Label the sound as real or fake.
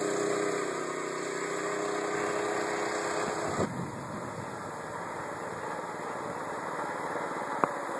real